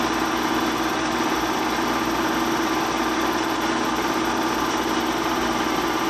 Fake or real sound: real